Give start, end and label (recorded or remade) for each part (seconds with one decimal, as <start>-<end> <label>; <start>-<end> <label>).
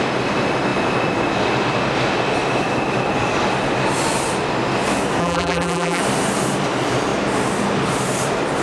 0.0-5.2 recorded; 5.2-6.0 remade; 6.0-8.6 recorded